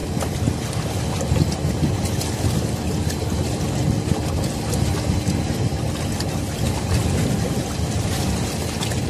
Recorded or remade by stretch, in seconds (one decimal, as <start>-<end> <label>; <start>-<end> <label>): 0.0-9.1 recorded